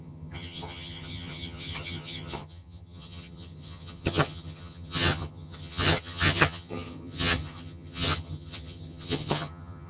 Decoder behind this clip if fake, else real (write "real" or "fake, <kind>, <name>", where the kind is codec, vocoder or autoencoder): fake, vocoder, HiFi-GAN